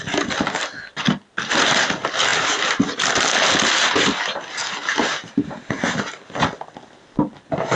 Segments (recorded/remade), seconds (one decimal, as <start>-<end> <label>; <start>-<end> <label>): 0.0-7.8 recorded